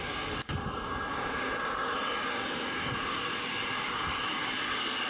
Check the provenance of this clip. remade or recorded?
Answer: recorded